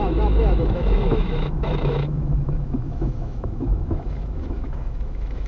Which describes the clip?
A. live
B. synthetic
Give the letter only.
B